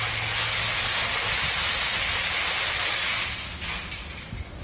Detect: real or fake real